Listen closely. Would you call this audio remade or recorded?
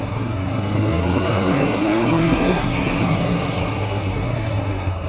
remade